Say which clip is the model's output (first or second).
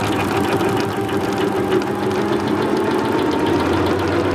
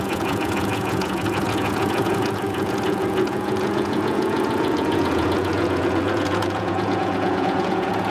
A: second